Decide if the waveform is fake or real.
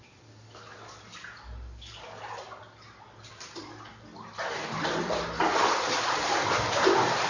real